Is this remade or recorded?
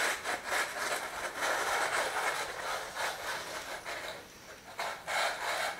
recorded